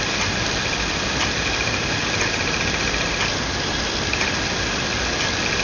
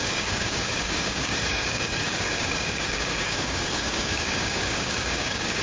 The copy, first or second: second